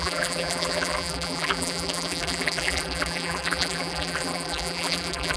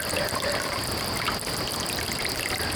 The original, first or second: second